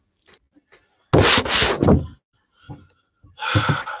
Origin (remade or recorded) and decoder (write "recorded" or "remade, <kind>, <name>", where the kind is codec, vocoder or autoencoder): recorded